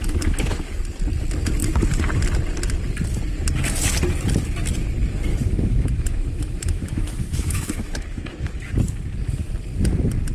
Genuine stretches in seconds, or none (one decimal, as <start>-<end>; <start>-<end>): 0.8-5.3; 8.7-10.3